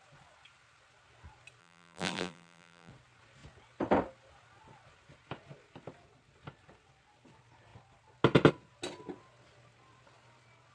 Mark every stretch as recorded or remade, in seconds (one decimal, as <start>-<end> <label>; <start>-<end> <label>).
0.0-1.6 recorded; 1.6-2.9 remade; 2.9-10.7 recorded